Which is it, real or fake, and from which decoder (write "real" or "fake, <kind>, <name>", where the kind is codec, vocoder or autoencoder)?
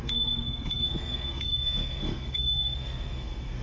fake, codec, SNAC